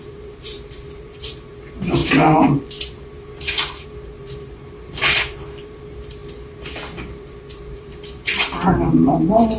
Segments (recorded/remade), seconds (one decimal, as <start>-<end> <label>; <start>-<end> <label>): 0.0-9.6 remade